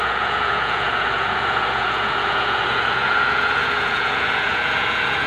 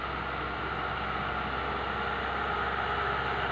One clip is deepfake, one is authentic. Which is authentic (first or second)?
second